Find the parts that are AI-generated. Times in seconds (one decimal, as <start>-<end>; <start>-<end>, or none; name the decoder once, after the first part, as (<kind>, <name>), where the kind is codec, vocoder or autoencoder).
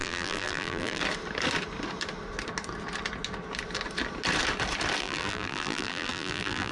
0.0-1.0 (vocoder, BigVGAN v2); 5.0-6.7